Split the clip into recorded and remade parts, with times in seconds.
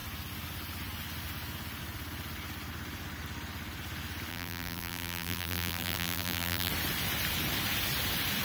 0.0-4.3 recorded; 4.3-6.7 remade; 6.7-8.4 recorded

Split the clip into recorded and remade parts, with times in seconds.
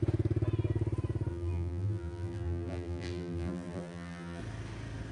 0.0-1.3 recorded; 1.3-4.4 remade; 4.4-5.1 recorded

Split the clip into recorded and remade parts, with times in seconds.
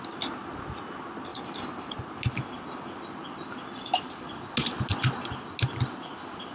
0.0-1.3 recorded; 1.3-2.1 remade; 2.1-6.5 recorded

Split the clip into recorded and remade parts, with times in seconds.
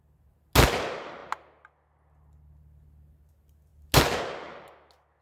0.0-5.2 recorded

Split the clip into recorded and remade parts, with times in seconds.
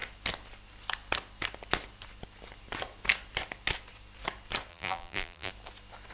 0.0-4.7 recorded; 4.7-5.5 remade; 5.5-6.1 recorded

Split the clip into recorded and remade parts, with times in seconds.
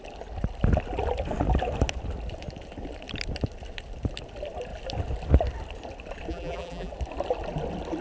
0.0-6.3 recorded; 6.3-6.9 remade; 6.9-8.0 recorded